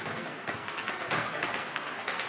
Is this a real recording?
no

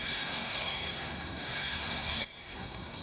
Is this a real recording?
no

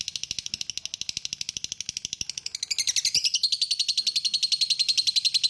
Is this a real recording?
yes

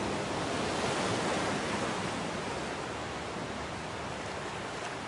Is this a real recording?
yes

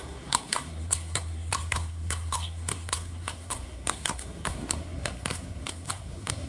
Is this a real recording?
no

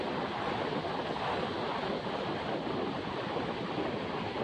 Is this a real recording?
yes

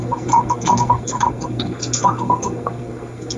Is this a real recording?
no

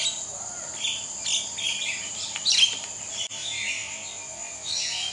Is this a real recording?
yes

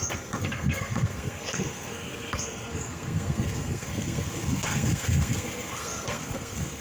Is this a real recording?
no